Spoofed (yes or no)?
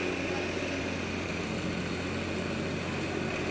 no